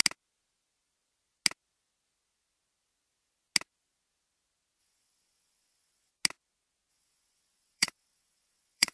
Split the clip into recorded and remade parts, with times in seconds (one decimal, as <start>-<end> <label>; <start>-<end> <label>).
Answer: 0.0-4.8 recorded; 4.8-6.1 remade; 6.1-6.9 recorded; 6.9-8.9 remade